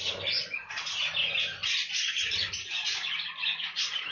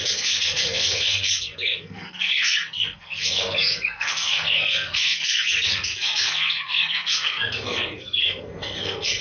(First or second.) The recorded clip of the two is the first